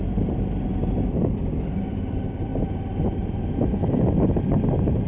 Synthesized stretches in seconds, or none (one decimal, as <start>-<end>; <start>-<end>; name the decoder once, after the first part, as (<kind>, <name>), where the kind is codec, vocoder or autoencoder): 0.0-2.5 (vocoder, BigVGAN v2)